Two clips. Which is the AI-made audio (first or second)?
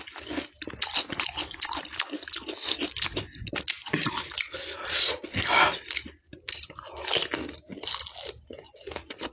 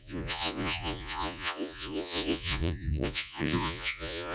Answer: second